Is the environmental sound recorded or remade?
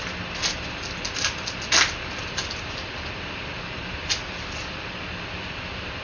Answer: recorded